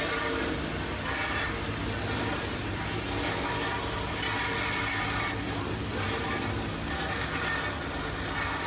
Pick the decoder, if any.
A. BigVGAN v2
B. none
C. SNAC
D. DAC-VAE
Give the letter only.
B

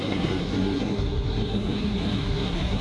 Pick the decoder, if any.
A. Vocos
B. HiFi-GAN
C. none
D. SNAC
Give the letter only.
D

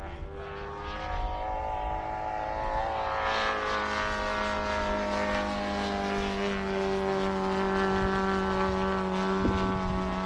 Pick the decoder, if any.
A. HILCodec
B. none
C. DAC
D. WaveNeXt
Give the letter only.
B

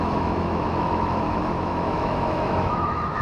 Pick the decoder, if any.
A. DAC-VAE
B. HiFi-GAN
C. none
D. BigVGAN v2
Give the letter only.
A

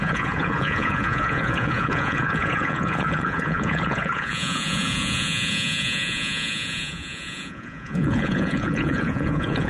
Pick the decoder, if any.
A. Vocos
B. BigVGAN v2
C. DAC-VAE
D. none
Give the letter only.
A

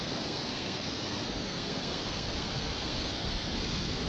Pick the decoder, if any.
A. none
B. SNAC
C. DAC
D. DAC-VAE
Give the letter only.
B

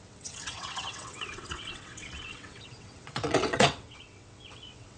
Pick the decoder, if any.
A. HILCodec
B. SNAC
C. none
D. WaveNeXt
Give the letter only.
D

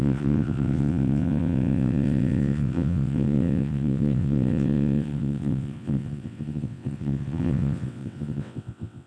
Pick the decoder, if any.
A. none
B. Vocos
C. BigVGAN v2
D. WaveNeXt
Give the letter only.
D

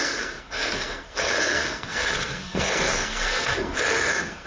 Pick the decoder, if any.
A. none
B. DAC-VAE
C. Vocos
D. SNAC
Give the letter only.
D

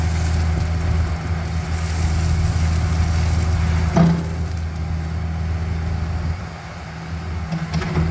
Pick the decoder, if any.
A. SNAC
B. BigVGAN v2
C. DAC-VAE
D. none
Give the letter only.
D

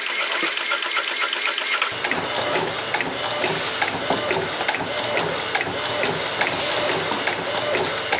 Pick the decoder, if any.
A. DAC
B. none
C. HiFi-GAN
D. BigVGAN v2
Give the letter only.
B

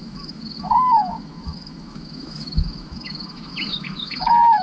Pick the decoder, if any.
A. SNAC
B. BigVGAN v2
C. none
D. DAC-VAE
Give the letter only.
D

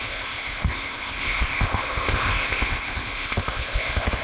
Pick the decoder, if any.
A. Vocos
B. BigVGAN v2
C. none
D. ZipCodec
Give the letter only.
D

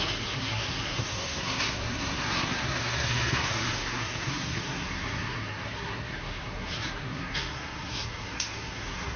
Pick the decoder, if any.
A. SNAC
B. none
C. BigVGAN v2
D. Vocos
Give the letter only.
A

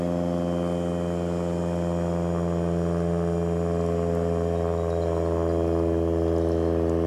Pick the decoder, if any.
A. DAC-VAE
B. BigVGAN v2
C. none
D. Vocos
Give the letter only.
C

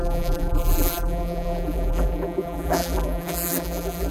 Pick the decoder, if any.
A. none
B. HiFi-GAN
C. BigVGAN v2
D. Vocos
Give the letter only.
C